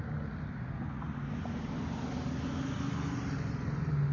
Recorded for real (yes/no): yes